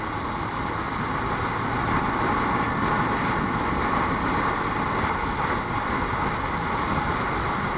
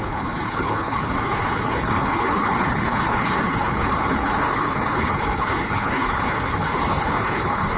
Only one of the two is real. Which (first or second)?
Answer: first